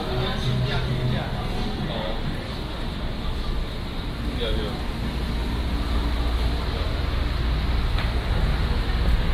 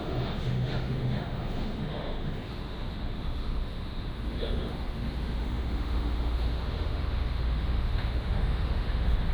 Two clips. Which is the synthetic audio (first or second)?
second